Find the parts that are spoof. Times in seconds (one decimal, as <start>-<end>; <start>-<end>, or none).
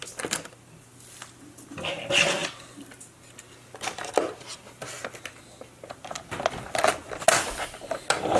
none